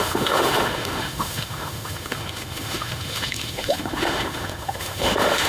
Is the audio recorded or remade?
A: remade